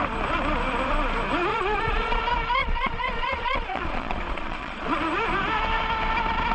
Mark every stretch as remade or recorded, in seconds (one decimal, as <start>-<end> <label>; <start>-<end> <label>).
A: 0.0-1.5 recorded; 1.5-2.2 remade; 2.2-2.6 recorded; 2.6-5.0 remade; 5.0-6.5 recorded